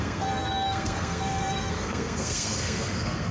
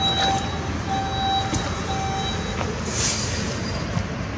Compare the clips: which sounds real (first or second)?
second